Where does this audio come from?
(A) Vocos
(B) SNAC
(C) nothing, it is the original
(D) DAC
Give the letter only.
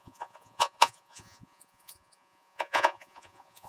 A